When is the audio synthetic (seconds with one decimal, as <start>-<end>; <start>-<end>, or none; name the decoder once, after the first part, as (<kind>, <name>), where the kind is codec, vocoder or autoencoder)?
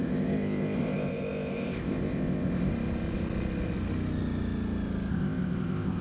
0.0-2.7 (codec, ZipCodec); 5.1-6.0